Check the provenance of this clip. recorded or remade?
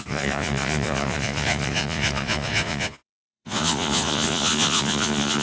remade